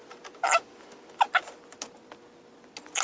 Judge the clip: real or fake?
real